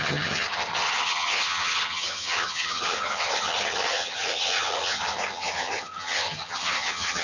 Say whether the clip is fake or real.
fake